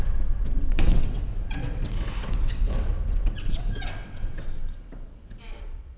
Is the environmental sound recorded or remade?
remade